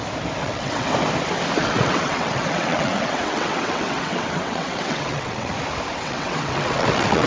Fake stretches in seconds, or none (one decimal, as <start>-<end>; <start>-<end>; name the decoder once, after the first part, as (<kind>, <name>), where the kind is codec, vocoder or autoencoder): 0.4-0.9 (vocoder, WaveNeXt); 1.6-5.5; 5.9-7.3